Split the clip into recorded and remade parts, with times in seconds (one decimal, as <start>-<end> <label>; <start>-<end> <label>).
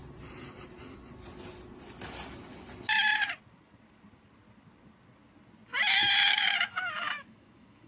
0.0-6.3 recorded; 6.3-7.9 remade